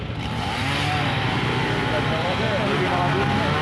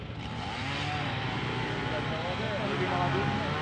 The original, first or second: second